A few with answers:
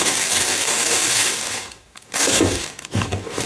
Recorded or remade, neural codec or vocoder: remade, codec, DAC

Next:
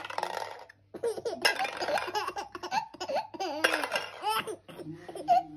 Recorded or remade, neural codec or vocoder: recorded